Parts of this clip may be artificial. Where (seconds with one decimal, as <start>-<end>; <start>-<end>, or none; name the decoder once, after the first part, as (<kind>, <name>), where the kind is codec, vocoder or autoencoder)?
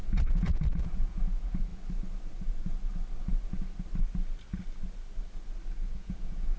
0.0-1.7 (vocoder, Vocos); 5.7-6.6